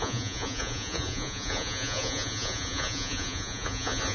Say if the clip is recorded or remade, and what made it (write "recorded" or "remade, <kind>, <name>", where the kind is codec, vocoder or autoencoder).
remade, vocoder, Vocos